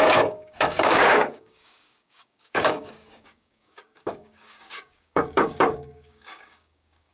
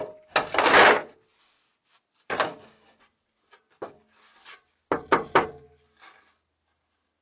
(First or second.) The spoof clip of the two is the first